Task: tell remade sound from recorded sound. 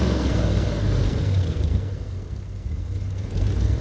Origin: remade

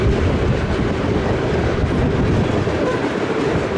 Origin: remade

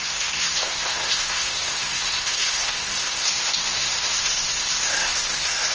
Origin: remade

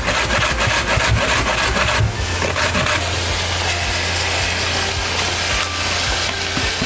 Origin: recorded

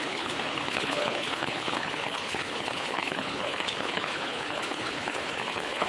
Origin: remade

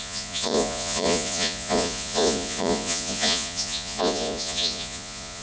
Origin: remade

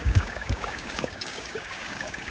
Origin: remade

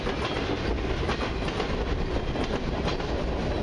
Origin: recorded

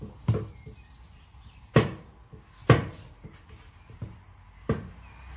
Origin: recorded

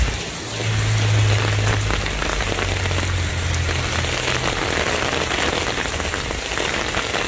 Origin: recorded